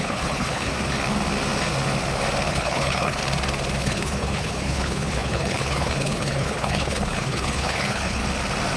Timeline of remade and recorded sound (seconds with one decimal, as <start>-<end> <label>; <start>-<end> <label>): 0.0-0.7 remade; 0.7-2.5 recorded; 2.5-3.2 remade; 3.2-3.8 recorded; 3.8-8.2 remade; 8.2-8.8 recorded